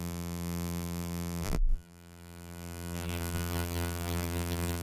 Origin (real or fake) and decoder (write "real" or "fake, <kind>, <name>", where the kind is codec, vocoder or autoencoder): fake, vocoder, BigVGAN v2